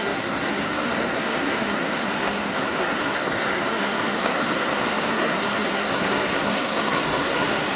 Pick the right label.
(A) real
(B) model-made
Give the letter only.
B